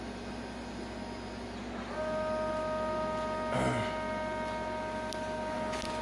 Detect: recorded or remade recorded